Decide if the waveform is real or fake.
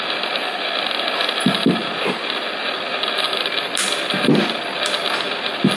real